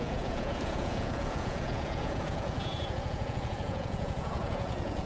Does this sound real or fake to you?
fake